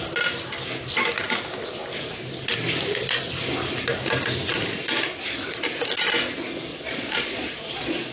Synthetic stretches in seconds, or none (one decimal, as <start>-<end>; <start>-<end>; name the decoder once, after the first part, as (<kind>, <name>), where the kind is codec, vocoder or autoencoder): 6.7-8.1 (vocoder, Vocos)